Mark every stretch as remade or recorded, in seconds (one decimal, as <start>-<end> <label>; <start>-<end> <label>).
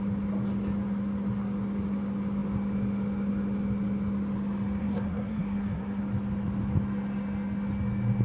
0.0-4.8 recorded; 4.8-6.0 remade; 6.0-8.2 recorded